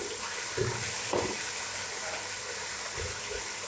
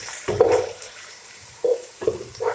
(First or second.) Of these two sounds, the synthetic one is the second